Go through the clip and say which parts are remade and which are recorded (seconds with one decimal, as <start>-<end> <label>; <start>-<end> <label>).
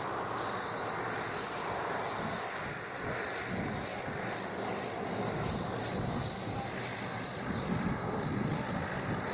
0.0-9.3 recorded